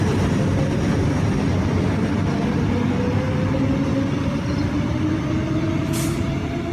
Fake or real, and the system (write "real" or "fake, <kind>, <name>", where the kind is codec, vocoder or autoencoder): real